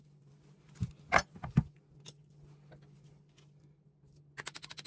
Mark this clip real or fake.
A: real